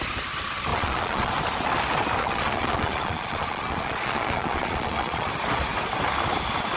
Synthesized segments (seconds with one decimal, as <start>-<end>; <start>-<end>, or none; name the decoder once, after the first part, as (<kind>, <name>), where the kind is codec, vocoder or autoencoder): 0.7-1.3 (vocoder, Vocos); 2.2-5.3

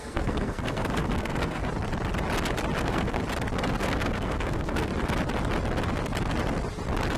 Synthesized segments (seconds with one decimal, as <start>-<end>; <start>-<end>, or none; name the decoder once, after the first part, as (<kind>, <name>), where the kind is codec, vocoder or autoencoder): 0.0-1.6 (codec, SNAC); 2.8-3.2; 3.8-4.9

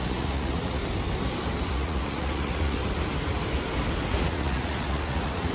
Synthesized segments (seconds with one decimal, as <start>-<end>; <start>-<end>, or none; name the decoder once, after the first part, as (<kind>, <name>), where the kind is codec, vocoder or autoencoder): 0.0-0.8 (vocoder, Vocos); 1.7-2.8; 4.2-5.5